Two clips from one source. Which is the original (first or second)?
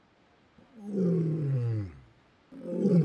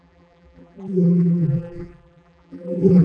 first